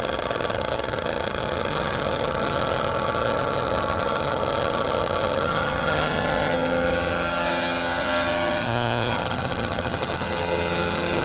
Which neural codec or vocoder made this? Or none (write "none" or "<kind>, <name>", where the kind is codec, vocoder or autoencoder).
vocoder, HiFi-GAN